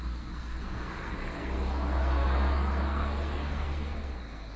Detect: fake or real fake